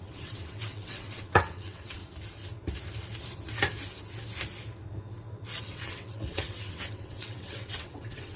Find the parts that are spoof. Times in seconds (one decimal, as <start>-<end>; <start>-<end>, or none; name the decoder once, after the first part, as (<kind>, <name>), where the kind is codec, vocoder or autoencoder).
0.0-2.0 (vocoder, WaveNeXt); 5.6-8.4